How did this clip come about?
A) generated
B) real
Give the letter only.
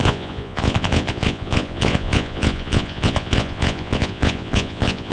A